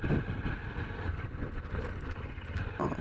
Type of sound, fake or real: real